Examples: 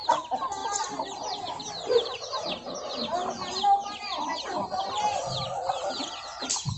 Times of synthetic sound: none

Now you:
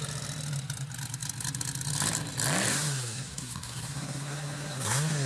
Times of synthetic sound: 2.7-5.3 (codec, SNAC)

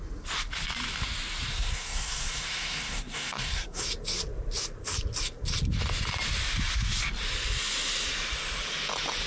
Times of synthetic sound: 1.5-3.8 (codec, SNAC)

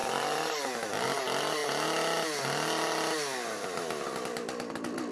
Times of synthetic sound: none

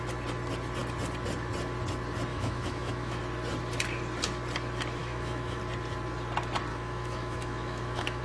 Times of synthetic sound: 2.3-3.2 (autoencoder, DAC-VAE); 5.0-5.6; 6.7-8.2